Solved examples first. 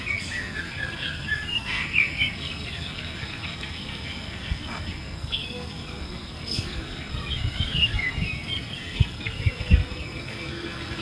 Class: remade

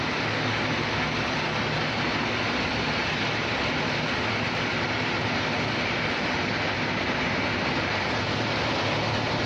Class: recorded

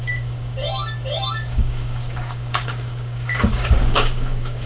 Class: remade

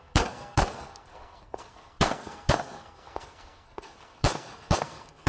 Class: remade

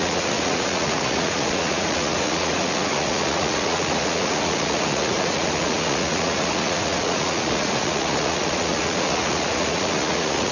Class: remade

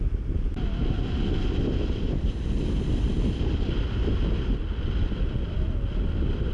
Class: recorded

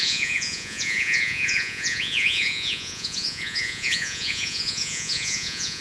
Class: remade